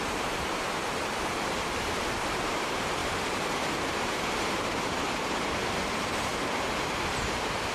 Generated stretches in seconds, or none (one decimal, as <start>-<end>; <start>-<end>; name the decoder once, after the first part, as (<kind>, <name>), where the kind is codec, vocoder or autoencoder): 0.0-6.3 (vocoder, BigVGAN v2); 7.1-7.7